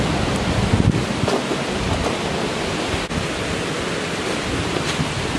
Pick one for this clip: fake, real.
real